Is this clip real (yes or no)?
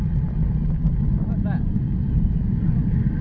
yes